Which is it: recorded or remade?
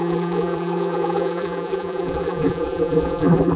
remade